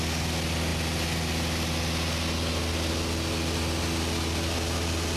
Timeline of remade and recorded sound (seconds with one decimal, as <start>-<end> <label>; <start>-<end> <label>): 0.0-5.2 recorded